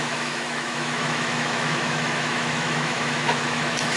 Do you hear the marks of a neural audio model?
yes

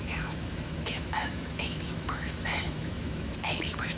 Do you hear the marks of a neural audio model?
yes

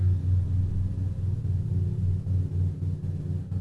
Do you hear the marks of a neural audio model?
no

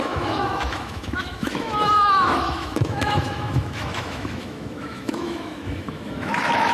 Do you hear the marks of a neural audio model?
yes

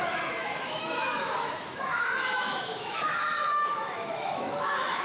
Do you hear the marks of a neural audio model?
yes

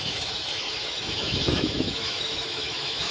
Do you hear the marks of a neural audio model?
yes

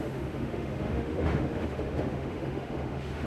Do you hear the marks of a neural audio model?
yes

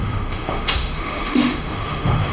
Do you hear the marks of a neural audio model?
yes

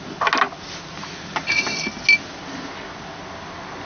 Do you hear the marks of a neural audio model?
no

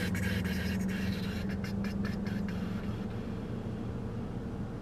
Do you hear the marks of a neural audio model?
no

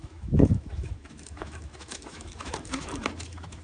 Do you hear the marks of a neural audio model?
yes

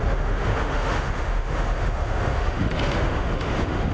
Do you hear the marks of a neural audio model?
yes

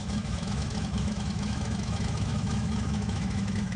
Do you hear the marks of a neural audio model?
yes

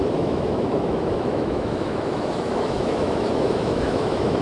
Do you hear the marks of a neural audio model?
yes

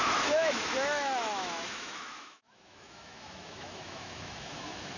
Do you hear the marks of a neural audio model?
yes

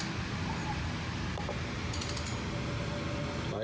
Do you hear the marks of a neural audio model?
no